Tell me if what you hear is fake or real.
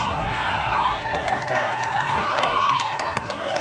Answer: fake